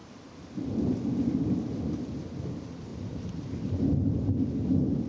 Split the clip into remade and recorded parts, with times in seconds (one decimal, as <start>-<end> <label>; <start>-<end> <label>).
0.0-2.9 recorded; 2.9-3.8 remade; 3.8-5.1 recorded